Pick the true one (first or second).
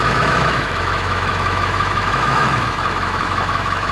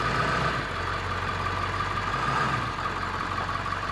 second